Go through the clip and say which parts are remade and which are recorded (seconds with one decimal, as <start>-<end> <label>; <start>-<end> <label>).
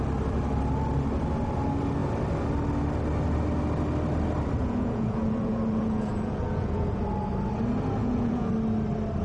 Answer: 0.0-4.6 recorded; 4.6-7.0 remade; 7.0-8.0 recorded; 8.0-8.5 remade; 8.5-9.2 recorded